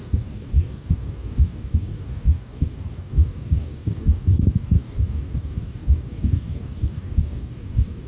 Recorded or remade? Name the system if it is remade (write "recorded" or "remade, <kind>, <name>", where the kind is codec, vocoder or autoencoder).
remade, codec, DAC